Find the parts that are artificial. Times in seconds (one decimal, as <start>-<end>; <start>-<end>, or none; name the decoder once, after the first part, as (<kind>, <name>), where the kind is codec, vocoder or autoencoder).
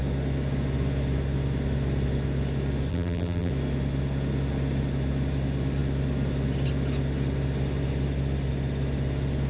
2.9-3.5 (vocoder, BigVGAN v2)